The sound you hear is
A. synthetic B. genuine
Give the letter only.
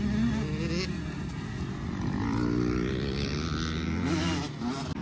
B